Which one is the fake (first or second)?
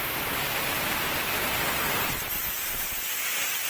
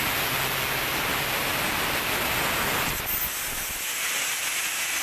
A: first